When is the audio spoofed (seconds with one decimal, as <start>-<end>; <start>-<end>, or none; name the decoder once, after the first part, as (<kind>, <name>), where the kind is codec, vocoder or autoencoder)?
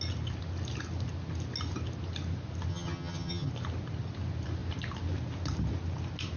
2.7-3.5 (vocoder, HiFi-GAN)